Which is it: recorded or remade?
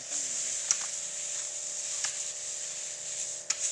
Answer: recorded